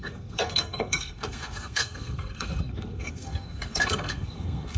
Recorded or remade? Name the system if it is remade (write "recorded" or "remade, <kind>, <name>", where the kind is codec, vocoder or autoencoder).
remade, codec, SNAC